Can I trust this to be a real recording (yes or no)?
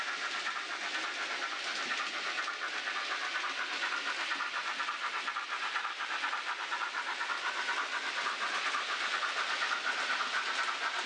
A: yes